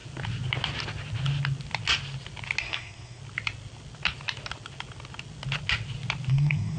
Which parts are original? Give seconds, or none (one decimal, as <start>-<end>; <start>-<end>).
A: 0.0-2.6; 3.2-6.3